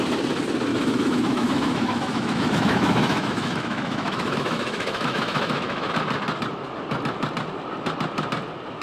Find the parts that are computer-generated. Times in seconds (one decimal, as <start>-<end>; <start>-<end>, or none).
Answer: 0.7-5.9

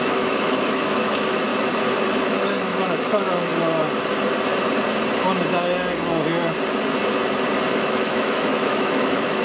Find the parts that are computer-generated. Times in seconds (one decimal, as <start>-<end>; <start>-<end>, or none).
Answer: 0.0-1.5; 2.2-3.5; 7.7-9.4

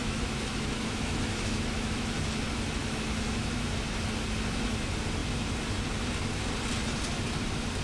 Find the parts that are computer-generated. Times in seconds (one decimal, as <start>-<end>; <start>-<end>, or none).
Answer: 0.0-2.1; 2.8-3.7

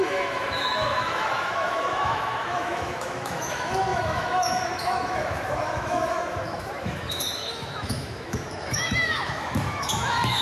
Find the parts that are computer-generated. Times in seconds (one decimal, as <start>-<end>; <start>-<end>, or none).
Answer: 0.0-10.4

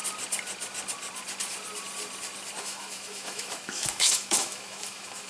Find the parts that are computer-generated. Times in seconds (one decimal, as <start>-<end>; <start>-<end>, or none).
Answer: 2.6-5.3

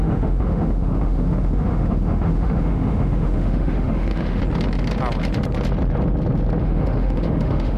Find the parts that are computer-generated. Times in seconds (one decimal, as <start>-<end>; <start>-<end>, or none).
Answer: 0.0-4.4; 6.6-7.8